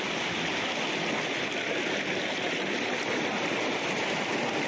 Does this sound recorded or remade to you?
recorded